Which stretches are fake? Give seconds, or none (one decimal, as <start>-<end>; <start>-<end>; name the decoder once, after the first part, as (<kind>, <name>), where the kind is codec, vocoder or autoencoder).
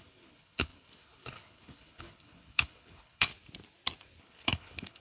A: 0.0-3.3 (codec, HILCodec); 4.2-5.0